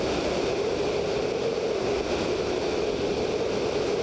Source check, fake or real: real